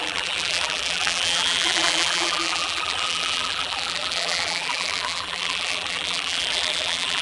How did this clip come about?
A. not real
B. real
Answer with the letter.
A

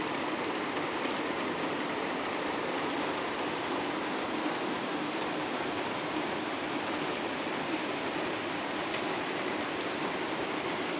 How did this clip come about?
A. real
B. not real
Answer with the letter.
B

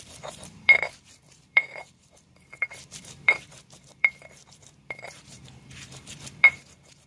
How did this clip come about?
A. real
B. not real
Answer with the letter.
B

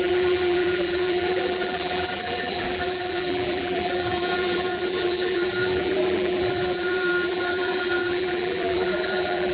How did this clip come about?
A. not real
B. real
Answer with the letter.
A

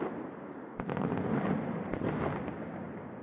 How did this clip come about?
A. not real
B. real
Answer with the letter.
B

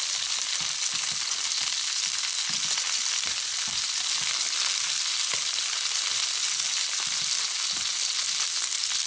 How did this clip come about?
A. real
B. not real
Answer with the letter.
A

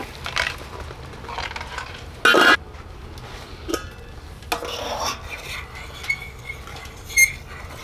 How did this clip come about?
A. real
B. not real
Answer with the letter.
A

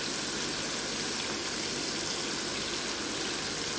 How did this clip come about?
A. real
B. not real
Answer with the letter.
A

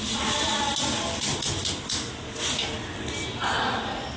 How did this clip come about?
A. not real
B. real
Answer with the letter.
B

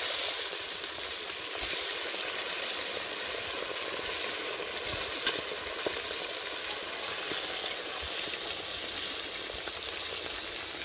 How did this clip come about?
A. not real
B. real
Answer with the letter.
B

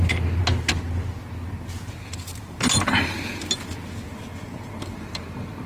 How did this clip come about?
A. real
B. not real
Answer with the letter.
A